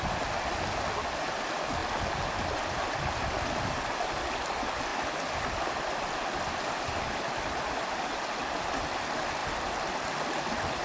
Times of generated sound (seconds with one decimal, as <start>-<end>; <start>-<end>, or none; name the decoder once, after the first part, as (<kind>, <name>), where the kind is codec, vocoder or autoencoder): none